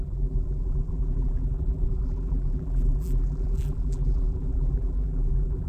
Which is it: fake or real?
fake